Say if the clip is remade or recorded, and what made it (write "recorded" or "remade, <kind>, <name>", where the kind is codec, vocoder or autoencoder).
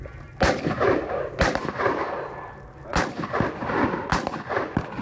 recorded